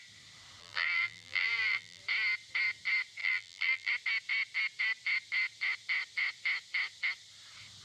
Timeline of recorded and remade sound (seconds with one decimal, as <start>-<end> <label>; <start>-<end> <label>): 0.0-0.6 recorded; 0.6-2.0 remade; 2.0-3.2 recorded; 3.2-3.9 remade; 3.9-7.8 recorded

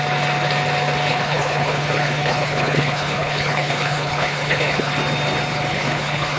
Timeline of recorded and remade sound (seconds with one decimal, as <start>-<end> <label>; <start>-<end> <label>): 0.0-1.1 recorded; 1.1-4.9 remade; 4.9-5.7 recorded; 5.7-6.4 remade

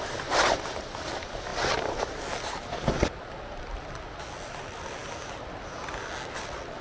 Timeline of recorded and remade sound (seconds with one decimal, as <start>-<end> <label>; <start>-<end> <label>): 0.0-6.8 recorded

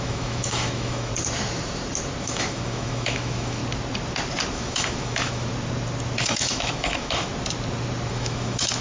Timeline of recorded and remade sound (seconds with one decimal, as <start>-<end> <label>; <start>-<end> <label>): 0.0-1.1 remade; 1.1-2.2 recorded; 2.2-3.6 remade; 3.6-4.5 recorded; 4.5-5.5 remade; 5.5-6.2 recorded; 6.2-7.3 remade; 7.3-8.1 recorded; 8.1-8.8 remade

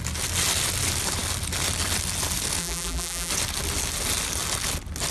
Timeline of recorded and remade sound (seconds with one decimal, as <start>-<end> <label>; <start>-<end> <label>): 0.0-2.6 recorded; 2.6-3.3 remade; 3.3-5.1 recorded

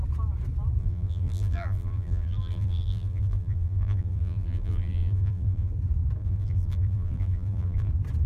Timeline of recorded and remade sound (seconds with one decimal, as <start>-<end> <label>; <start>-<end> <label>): 0.0-0.8 recorded; 0.8-5.7 remade; 5.7-6.2 recorded; 6.2-7.9 remade; 7.9-8.3 recorded